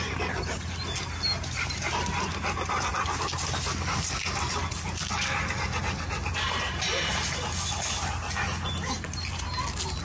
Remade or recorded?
recorded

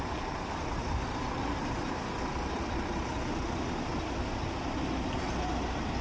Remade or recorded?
recorded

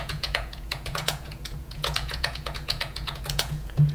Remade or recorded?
remade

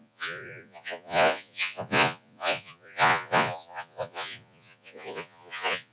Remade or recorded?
remade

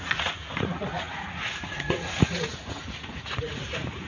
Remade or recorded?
remade